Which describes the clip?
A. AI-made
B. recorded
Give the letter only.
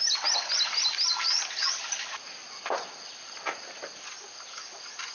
B